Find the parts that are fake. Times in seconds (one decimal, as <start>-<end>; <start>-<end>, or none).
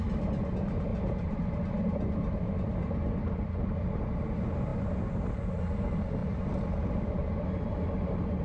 0.9-3.9; 6.2-7.2